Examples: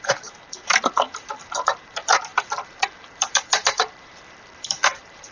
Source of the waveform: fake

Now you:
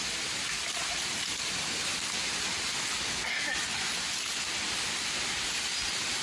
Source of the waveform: real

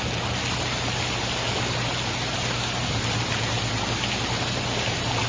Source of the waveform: real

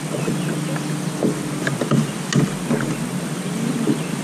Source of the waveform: real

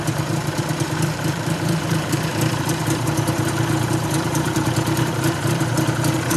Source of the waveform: fake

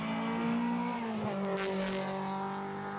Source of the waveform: real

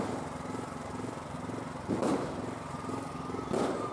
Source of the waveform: fake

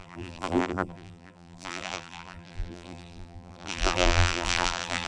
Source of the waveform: fake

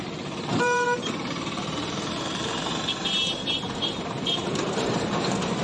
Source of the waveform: fake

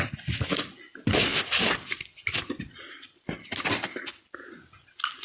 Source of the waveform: real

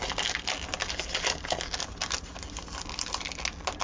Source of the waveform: real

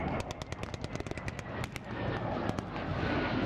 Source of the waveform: real